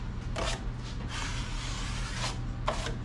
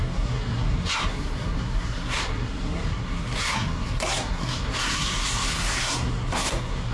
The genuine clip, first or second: first